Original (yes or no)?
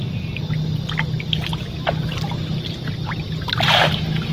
yes